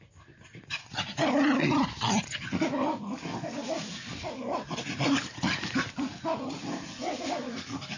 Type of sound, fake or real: real